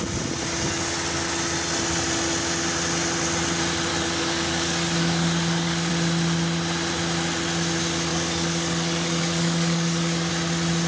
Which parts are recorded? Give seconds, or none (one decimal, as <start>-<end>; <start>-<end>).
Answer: 0.0-3.9; 5.9-8.1; 10.3-10.9